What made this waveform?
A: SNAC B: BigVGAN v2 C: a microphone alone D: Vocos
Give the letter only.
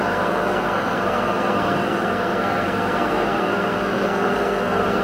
A